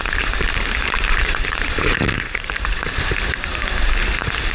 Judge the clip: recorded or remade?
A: remade